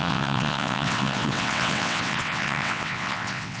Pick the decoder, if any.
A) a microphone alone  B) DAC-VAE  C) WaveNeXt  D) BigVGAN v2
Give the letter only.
C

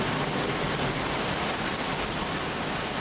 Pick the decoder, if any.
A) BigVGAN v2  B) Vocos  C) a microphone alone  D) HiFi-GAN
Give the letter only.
C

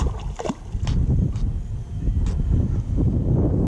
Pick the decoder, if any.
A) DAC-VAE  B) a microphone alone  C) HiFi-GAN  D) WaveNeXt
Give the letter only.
B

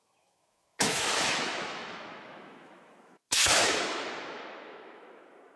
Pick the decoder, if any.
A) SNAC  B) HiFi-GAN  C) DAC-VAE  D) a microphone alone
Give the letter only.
C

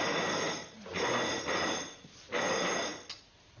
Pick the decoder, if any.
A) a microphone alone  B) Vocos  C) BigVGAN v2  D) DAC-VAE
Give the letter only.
A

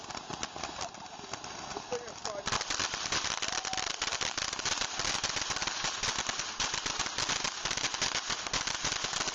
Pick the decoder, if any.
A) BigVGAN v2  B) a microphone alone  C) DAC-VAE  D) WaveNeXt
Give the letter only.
B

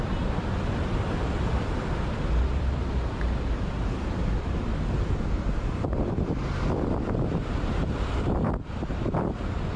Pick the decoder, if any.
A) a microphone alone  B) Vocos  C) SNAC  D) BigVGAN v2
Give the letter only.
D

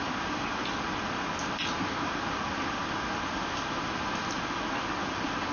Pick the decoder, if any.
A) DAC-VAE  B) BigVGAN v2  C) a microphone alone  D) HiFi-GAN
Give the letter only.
C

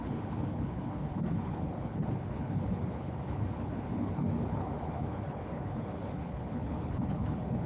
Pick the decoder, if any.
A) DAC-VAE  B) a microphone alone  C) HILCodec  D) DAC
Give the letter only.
C